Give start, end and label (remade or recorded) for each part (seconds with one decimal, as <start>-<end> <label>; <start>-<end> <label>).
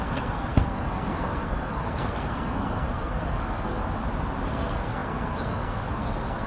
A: 0.0-3.8 remade; 3.8-4.5 recorded; 4.5-6.5 remade